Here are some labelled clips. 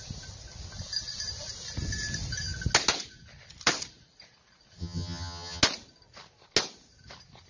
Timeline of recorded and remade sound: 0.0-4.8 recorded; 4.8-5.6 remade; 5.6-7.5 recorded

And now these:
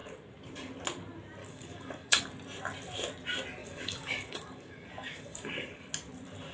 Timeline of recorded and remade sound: 0.0-1.4 recorded; 1.4-2.2 remade; 2.2-3.6 recorded; 3.6-5.9 remade; 5.9-6.5 recorded

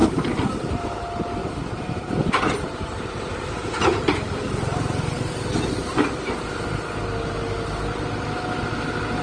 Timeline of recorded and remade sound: 0.0-0.8 remade; 0.8-1.4 recorded; 1.4-5.3 remade; 5.3-5.8 recorded; 5.8-6.4 remade; 6.4-9.2 recorded

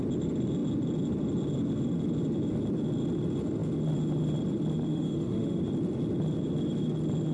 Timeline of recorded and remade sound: 0.0-4.9 recorded; 4.9-5.6 remade; 5.6-7.3 recorded

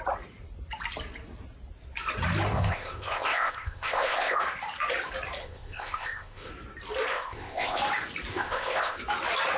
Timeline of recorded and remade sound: 0.0-2.5 recorded; 2.5-4.4 remade; 4.4-5.4 recorded; 5.4-6.5 remade; 6.5-7.1 recorded; 7.1-7.8 remade; 7.8-8.3 recorded; 8.3-9.0 remade; 9.0-9.6 recorded

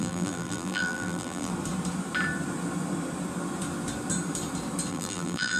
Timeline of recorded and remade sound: 0.0-1.5 remade; 1.5-4.9 recorded; 4.9-5.6 remade

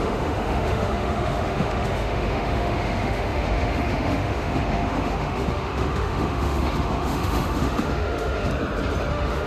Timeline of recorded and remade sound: 0.0-8.5 remade; 8.5-9.1 recorded; 9.1-9.5 remade